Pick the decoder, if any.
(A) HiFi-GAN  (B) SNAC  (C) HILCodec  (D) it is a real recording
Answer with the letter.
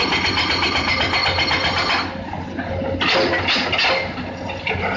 D